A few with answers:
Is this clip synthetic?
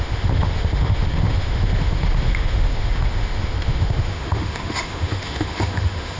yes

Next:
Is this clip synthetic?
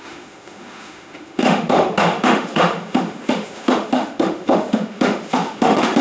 yes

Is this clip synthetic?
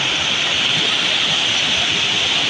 no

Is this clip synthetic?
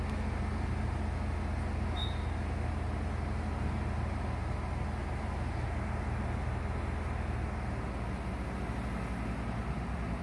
no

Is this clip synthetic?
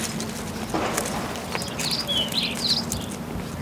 no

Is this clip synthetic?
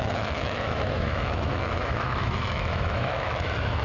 yes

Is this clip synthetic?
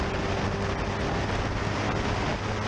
no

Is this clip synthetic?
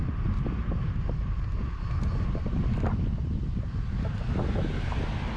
no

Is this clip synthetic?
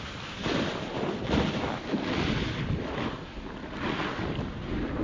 no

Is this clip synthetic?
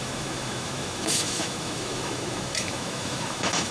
yes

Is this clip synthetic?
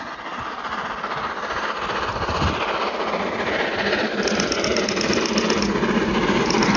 no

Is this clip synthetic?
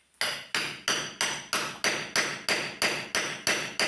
no